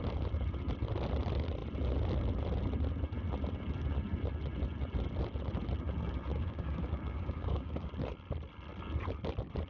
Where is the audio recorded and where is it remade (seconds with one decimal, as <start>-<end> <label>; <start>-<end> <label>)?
0.0-6.3 recorded; 6.3-7.9 remade; 7.9-9.7 recorded